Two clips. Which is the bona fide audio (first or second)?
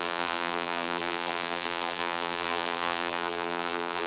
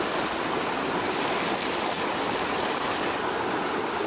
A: second